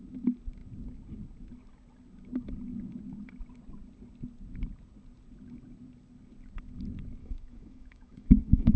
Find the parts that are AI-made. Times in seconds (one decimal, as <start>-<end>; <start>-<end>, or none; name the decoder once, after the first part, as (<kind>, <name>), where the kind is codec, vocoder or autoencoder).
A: 7.2-8.8 (autoencoder, DAC-VAE)